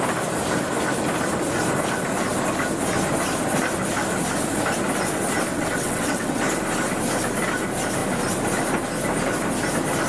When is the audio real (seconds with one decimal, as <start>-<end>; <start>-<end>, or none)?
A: 0.0-5.5; 6.4-10.1